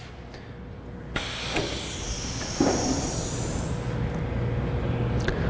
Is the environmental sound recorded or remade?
recorded